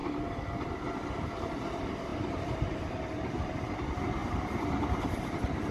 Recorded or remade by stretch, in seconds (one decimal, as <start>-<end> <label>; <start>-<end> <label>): 0.0-2.1 recorded; 2.1-3.2 remade; 3.2-4.2 recorded; 4.2-5.0 remade; 5.0-5.7 recorded